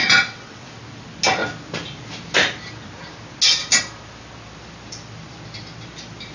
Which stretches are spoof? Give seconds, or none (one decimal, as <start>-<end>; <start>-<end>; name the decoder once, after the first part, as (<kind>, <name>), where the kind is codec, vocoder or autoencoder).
0.0-0.7 (vocoder, WaveNeXt)